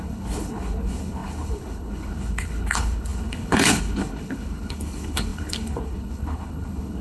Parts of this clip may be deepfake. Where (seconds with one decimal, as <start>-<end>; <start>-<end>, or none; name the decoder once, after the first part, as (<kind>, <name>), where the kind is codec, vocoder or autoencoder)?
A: 0.0-7.0 (codec, HILCodec)